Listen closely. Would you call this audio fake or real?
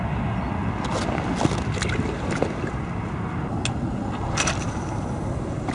real